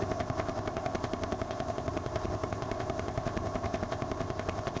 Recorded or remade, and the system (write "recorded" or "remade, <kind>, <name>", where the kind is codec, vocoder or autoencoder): remade, codec, ZipCodec